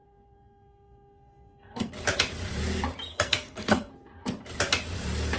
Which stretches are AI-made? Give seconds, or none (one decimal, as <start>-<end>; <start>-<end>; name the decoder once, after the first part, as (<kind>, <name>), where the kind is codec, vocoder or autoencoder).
0.0-1.9 (codec, SNAC); 3.1-3.9